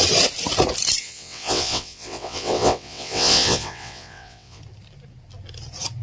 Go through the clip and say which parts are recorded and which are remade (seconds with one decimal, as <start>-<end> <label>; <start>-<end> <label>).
0.0-1.0 recorded; 1.0-4.6 remade; 4.6-6.0 recorded